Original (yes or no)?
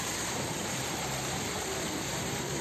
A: no